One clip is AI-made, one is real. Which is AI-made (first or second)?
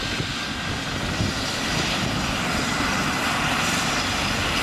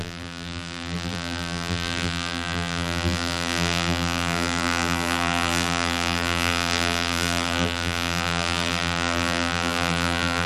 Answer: second